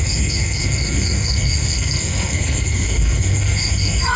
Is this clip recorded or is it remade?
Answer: remade